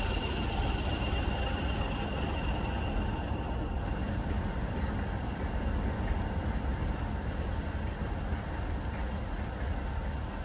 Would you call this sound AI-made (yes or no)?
no